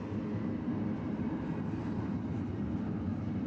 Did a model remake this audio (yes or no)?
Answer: no